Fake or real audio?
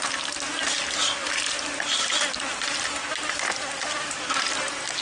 real